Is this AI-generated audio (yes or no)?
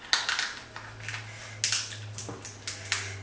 no